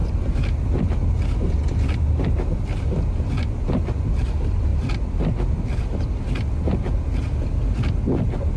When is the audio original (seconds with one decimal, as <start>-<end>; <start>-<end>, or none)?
0.0-8.6